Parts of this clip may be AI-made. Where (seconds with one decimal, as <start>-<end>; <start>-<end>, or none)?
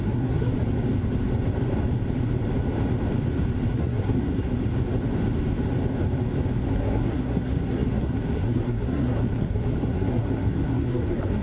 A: 0.0-0.5; 3.7-4.5; 6.7-11.4